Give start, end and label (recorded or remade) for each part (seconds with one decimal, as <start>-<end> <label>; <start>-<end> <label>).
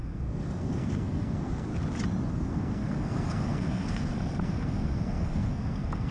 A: 0.0-1.7 remade; 1.7-2.3 recorded; 2.3-6.1 remade